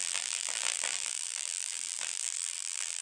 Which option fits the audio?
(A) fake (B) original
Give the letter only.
A